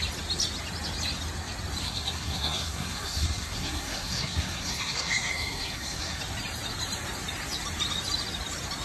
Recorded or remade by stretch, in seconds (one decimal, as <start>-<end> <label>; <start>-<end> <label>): 0.0-1.8 recorded; 1.8-6.2 remade; 6.2-8.8 recorded